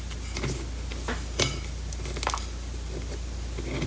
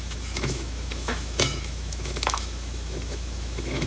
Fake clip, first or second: second